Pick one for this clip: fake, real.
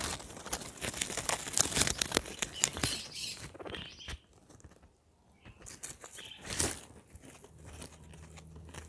real